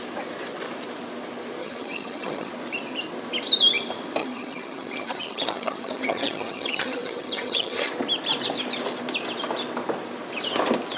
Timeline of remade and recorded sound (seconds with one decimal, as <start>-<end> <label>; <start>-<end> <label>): 0.0-1.6 recorded; 1.6-2.5 remade; 2.5-4.2 recorded; 4.2-7.9 remade; 7.9-11.0 recorded